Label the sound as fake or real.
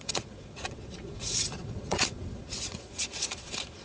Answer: fake